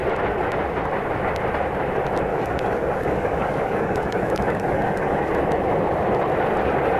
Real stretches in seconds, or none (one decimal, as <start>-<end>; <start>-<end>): 0.0-2.3; 5.3-7.0